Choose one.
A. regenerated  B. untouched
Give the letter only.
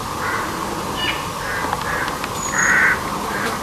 B